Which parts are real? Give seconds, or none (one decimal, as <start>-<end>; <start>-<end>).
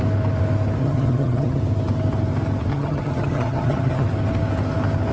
0.0-0.8; 1.6-2.7; 4.1-5.1